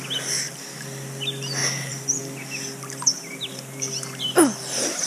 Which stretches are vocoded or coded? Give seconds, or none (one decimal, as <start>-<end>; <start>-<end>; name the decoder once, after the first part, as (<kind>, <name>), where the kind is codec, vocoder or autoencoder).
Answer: 1.6-2.2 (vocoder, BigVGAN v2); 3.1-3.9